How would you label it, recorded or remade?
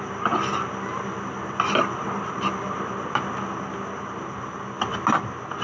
recorded